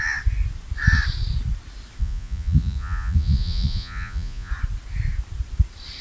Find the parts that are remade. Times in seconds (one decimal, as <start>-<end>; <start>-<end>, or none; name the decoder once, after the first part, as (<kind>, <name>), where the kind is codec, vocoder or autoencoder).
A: 2.0-4.5 (vocoder, Vocos)